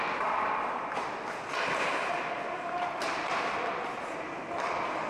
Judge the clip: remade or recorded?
recorded